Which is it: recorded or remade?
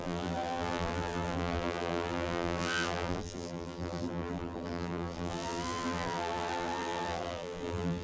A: remade